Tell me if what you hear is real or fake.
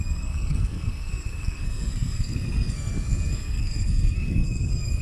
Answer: fake